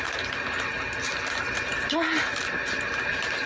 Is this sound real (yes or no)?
yes